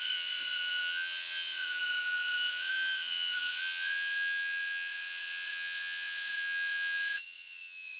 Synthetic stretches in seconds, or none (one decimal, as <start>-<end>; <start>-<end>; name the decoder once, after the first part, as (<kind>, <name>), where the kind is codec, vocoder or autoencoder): 0.0-8.0 (vocoder, WaveNeXt)